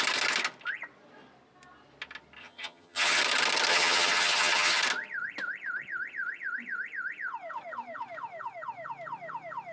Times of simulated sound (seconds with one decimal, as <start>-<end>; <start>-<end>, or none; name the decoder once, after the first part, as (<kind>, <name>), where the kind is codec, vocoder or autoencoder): 2.4-3.2 (vocoder, HiFi-GAN); 3.7-4.8